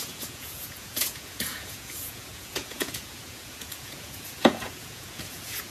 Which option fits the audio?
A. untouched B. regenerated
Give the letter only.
B